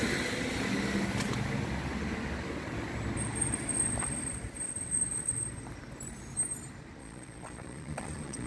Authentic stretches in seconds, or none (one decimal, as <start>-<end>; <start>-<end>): 0.0-7.0